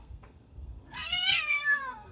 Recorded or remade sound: remade